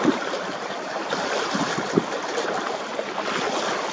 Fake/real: real